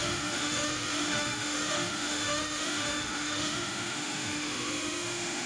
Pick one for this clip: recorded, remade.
remade